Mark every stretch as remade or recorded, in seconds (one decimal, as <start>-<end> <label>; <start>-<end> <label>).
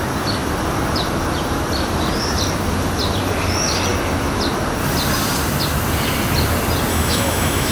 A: 0.0-6.9 recorded; 6.9-7.7 remade